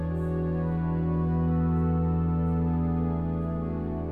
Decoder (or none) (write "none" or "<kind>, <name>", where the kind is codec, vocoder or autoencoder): none